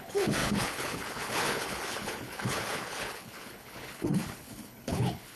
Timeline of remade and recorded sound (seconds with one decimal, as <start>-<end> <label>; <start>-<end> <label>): 0.0-5.4 remade